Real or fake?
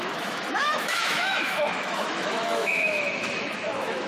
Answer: fake